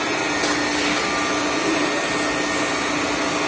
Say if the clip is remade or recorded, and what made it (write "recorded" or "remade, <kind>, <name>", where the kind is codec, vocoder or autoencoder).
recorded